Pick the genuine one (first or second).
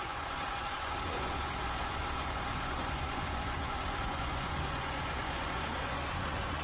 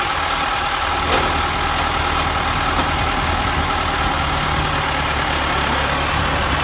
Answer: second